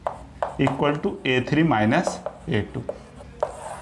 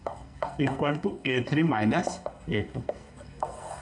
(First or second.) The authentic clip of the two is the first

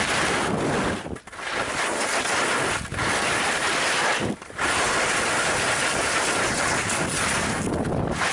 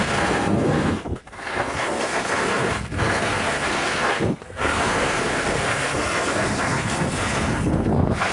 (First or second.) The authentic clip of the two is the first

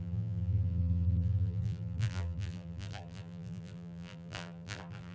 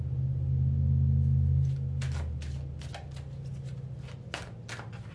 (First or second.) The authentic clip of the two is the second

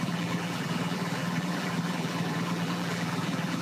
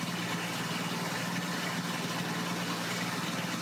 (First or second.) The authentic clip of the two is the second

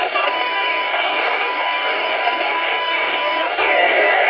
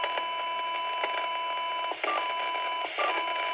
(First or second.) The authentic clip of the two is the second